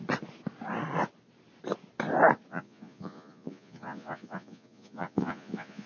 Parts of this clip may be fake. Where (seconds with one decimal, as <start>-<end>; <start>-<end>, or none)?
2.5-5.9